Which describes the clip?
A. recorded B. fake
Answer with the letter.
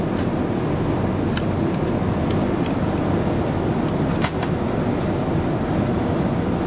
A